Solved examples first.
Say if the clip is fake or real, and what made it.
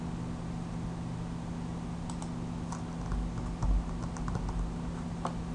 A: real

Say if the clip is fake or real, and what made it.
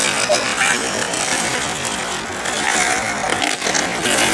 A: real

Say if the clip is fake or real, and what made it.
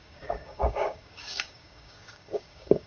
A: fake, codec, DAC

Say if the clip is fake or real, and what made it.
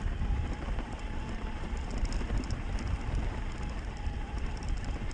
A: real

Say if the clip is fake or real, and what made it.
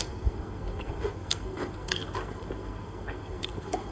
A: fake, codec, SNAC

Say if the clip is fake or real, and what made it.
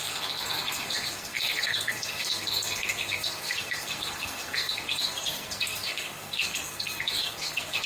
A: fake, codec, SNAC